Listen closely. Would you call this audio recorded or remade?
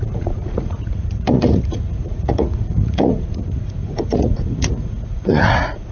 remade